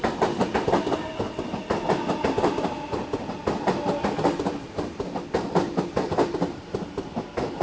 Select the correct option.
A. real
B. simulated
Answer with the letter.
A